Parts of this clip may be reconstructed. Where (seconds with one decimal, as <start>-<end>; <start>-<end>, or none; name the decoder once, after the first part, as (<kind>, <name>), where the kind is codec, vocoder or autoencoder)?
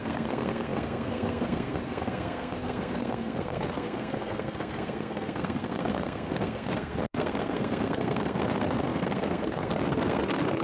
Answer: 0.0-10.6 (codec, SNAC)